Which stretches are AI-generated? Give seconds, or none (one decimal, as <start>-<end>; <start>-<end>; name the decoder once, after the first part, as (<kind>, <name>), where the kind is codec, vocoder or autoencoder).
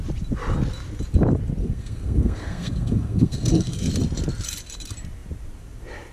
1.6-3.9 (codec, SNAC)